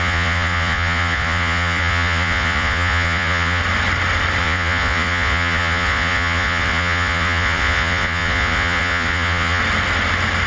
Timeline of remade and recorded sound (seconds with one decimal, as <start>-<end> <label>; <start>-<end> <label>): 0.0-3.6 remade; 3.6-4.4 recorded; 4.4-9.6 remade; 9.6-10.5 recorded